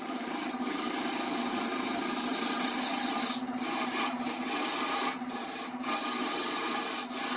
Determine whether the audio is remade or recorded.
remade